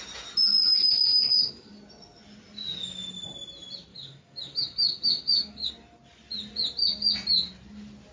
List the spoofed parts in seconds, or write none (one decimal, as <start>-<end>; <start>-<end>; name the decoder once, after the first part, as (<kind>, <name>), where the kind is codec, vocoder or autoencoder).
1.2-1.7 (codec, DAC); 3.9-5.7

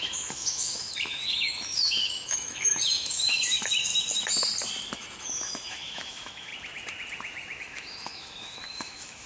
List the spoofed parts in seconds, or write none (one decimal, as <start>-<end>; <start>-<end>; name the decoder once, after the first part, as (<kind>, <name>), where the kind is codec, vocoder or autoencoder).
0.0-3.9 (autoencoder, DAC-VAE); 5.2-6.5; 7.6-9.3